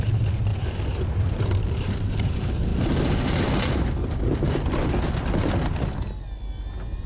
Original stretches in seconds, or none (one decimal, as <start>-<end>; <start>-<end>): 0.5-1.1; 2.7-7.1